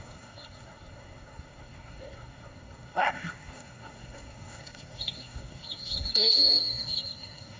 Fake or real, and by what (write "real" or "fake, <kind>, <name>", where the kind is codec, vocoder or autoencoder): fake, codec, SNAC